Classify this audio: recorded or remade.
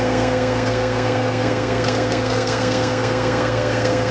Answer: remade